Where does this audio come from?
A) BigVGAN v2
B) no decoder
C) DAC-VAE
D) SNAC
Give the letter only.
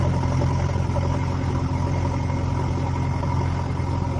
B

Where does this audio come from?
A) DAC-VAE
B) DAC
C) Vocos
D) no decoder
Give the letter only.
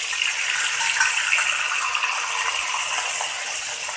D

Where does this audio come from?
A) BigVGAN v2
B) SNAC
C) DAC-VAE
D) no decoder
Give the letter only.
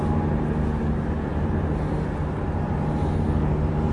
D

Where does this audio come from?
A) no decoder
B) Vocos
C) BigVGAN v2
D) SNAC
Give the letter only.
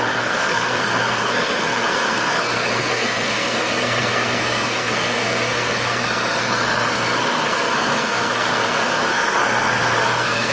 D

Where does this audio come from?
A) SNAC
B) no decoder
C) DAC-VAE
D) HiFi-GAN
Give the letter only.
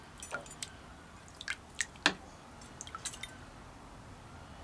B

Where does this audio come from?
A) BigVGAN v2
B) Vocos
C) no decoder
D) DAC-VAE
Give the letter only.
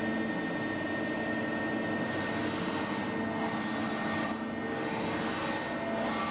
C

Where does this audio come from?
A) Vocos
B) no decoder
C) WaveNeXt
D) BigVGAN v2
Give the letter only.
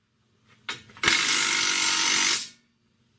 B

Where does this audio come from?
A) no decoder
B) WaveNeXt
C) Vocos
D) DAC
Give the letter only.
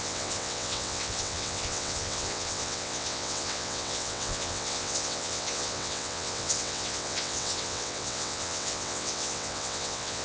B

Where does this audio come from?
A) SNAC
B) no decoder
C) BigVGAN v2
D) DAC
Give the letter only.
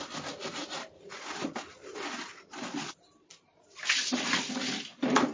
B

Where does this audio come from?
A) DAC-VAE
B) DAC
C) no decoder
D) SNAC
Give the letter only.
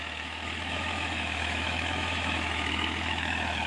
A